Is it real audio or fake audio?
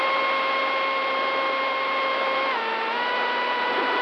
fake